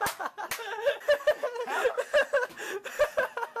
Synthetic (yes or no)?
no